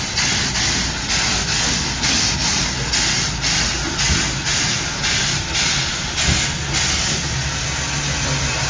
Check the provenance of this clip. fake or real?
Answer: real